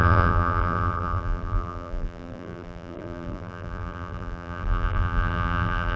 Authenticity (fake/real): fake